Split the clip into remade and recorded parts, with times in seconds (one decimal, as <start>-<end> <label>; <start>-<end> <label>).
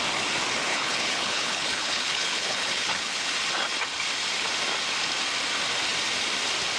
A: 0.0-0.7 recorded; 0.7-3.3 remade; 3.3-6.8 recorded